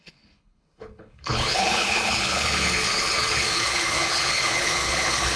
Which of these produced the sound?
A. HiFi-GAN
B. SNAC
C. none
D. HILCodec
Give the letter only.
D